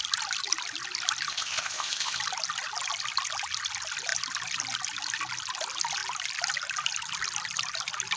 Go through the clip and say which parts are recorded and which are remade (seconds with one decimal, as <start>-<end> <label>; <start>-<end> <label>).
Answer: 0.0-1.3 recorded; 1.3-2.2 remade; 2.2-8.2 recorded